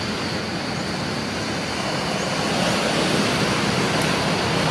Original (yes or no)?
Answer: yes